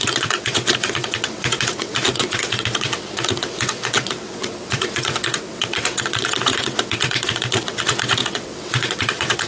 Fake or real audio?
fake